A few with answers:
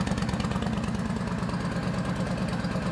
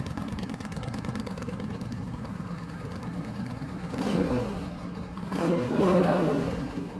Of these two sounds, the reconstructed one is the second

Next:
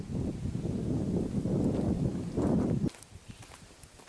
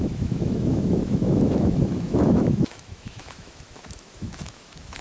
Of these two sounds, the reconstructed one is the second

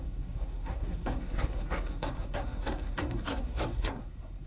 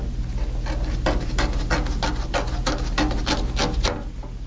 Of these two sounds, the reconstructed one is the first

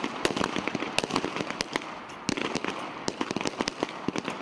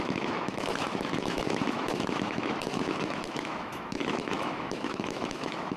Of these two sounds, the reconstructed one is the second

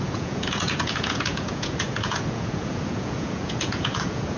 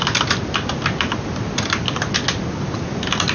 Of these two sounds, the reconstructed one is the first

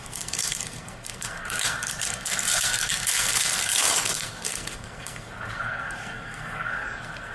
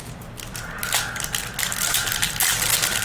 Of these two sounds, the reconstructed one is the first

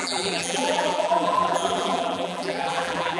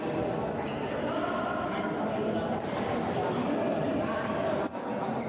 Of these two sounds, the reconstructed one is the first